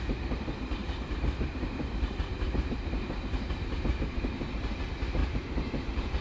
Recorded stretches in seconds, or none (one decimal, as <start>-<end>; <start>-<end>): 0.0-0.8; 4.5-5.2